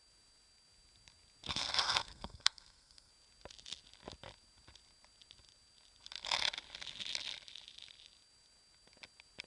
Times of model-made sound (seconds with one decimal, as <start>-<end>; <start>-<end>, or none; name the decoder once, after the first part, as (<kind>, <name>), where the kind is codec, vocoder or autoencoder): 1.5-3.1 (codec, SNAC)